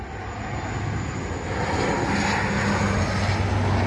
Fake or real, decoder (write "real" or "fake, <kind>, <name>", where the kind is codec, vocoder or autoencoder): real